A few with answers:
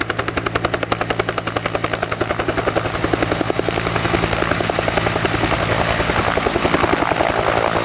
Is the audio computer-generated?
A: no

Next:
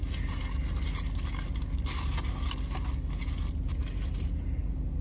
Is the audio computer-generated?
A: no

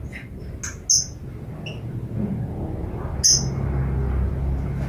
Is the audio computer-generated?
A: no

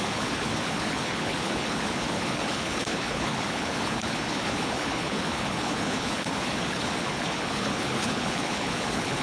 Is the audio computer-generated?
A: yes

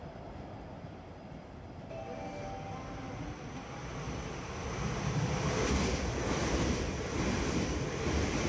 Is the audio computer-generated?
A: yes